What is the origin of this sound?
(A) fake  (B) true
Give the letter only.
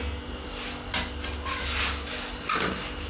B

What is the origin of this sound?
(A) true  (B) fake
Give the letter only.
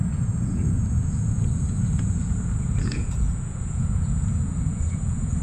B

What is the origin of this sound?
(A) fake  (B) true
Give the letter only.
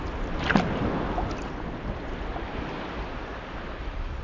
B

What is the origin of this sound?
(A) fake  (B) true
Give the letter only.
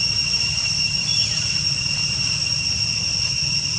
B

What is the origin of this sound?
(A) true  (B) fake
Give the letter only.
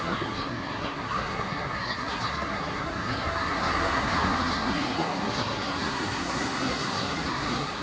B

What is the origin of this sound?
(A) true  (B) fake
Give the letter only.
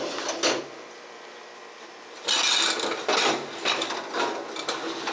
A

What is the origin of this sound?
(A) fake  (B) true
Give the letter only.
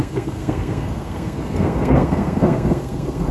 A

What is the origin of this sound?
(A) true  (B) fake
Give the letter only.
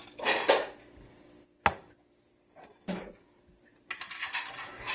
A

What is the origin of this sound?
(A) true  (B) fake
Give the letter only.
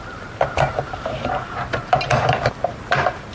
B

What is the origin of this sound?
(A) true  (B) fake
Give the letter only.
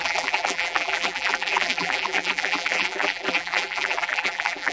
B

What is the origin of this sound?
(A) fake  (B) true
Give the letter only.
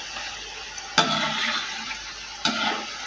B